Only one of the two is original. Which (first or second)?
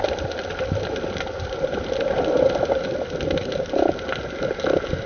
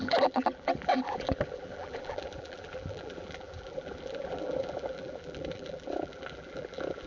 first